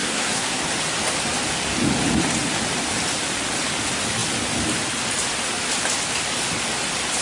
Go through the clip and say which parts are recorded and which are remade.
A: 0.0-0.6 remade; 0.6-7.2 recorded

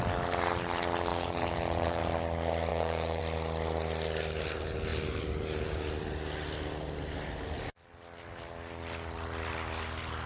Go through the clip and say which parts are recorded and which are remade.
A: 0.0-1.1 recorded; 1.1-2.0 remade; 2.0-2.7 recorded; 2.7-3.2 remade; 3.2-10.3 recorded

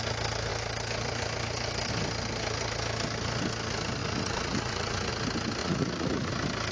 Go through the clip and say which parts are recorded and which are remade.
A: 0.0-4.0 recorded; 4.0-5.1 remade; 5.1-5.6 recorded; 5.6-6.3 remade; 6.3-6.7 recorded

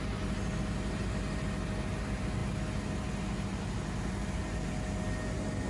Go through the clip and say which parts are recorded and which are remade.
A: 0.0-5.7 recorded